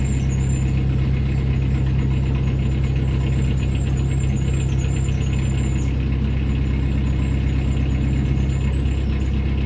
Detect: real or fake real